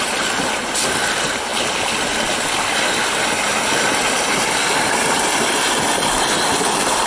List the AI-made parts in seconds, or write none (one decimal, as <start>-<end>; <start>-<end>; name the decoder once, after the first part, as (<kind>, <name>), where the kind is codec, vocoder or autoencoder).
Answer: none